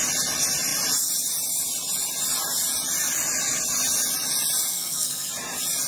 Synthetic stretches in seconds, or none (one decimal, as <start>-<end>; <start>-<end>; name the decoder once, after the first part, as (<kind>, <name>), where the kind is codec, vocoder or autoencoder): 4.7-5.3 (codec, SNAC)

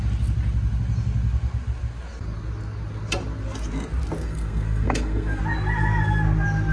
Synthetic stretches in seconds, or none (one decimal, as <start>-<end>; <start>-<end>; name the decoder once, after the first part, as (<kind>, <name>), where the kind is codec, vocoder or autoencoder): 4.2-5.4 (codec, SNAC)

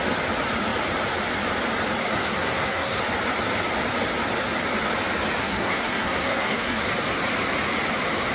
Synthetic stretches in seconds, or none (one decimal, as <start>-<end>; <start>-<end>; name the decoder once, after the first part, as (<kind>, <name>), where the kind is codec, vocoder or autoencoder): 2.0-3.0 (codec, SNAC); 5.4-6.8

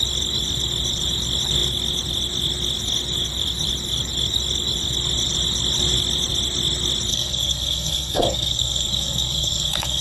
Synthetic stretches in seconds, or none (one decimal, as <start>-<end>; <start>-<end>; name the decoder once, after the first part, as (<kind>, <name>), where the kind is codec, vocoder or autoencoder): 7.1-10.0 (codec, SNAC)

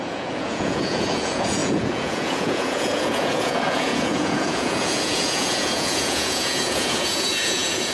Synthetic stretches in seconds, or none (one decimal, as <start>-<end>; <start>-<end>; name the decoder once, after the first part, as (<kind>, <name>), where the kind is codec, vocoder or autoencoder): 0.0-7.9 (vocoder, Vocos)

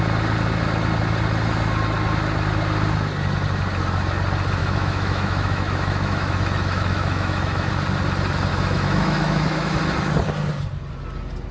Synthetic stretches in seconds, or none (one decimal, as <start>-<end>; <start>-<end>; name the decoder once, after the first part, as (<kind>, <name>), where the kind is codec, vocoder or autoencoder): 4.6-7.7 (autoencoder, DAC-VAE); 8.5-9.8